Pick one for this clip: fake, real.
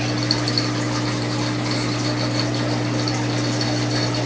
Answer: real